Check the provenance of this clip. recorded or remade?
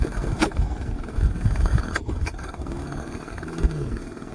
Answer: remade